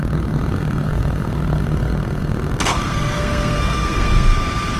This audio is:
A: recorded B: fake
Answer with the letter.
B